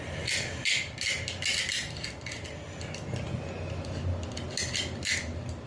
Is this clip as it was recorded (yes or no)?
yes